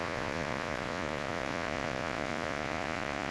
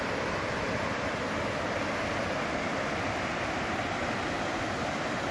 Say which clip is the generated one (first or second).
first